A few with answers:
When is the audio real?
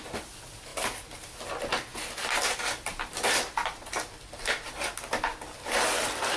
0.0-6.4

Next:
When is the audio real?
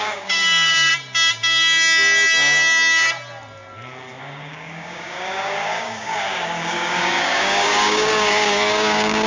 0.9-4.2